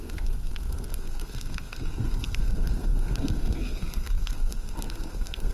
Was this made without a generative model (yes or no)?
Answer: no